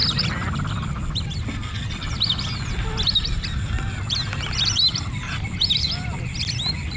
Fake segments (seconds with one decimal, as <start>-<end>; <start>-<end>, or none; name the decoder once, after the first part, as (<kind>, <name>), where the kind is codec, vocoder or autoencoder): none